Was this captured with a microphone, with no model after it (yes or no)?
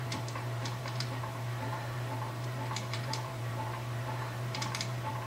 no